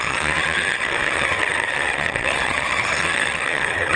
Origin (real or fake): fake